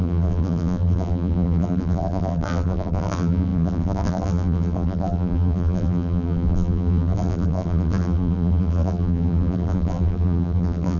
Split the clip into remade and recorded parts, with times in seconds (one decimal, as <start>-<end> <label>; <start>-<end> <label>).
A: 0.0-11.0 remade